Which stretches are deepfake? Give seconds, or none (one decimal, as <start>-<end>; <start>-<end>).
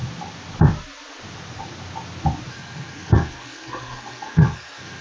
2.5-5.0